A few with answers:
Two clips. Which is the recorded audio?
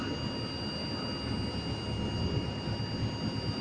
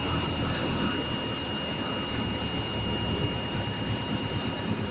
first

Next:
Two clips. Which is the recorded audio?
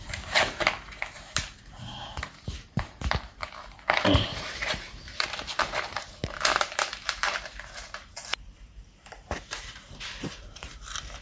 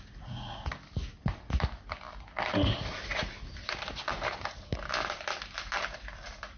second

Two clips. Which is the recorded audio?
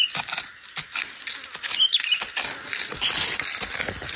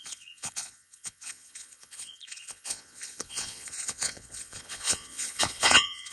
first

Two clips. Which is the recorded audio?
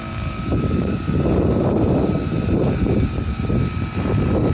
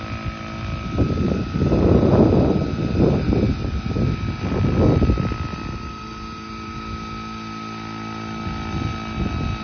second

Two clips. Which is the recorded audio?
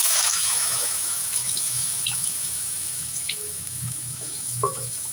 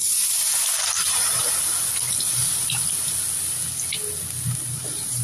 second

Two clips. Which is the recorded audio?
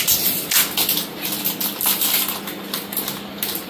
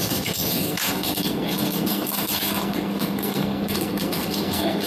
first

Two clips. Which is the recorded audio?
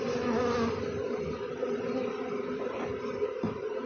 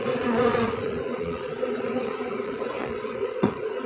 first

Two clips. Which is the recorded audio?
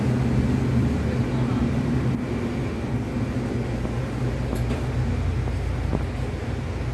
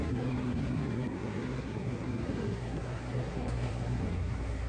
first